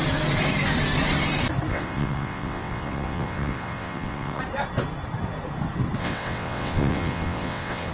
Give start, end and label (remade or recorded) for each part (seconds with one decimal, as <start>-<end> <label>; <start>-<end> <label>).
0.0-1.7 recorded; 1.7-4.4 remade; 4.4-6.0 recorded; 6.0-7.9 remade